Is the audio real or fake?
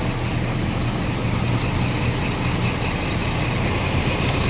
real